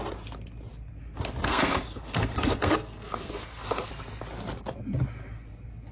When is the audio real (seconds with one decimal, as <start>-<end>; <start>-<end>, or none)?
0.0-1.4; 3.9-5.9